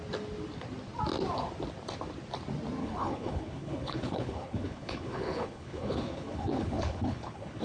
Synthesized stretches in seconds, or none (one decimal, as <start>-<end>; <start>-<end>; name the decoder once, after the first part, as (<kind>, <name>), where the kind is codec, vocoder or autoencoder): 2.8-7.6 (codec, HILCodec)